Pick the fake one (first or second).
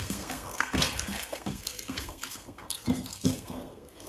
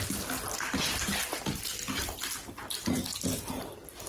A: first